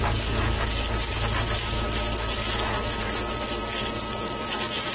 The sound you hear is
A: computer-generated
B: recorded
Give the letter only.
B